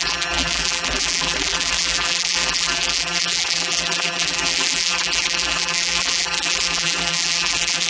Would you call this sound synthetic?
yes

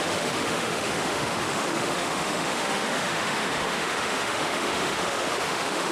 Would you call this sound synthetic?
yes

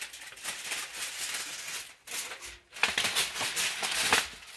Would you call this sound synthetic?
no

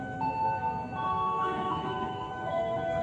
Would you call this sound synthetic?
yes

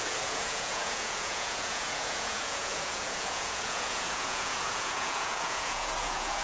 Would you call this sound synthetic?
yes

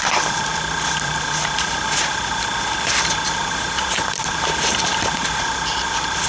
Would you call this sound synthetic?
yes